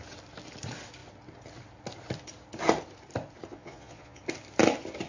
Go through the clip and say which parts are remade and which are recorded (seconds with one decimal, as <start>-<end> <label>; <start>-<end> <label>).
0.0-3.5 recorded; 3.5-4.2 remade; 4.2-5.1 recorded